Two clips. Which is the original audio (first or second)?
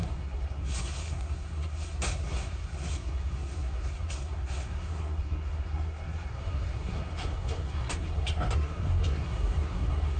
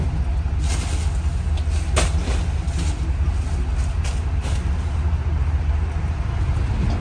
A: second